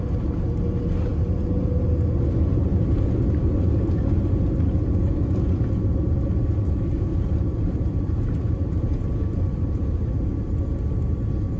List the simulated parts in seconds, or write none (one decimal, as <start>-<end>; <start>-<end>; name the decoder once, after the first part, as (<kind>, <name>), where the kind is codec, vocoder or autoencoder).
7.1-10.9 (vocoder, BigVGAN v2)